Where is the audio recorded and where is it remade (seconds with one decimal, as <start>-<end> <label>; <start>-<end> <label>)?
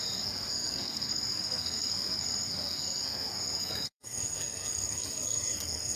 0.0-6.0 remade